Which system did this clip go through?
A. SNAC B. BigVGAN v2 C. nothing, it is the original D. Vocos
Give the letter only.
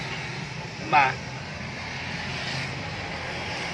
C